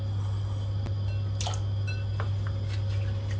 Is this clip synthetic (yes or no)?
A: no